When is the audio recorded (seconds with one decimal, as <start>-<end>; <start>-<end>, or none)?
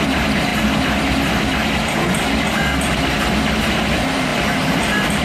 0.5-3.6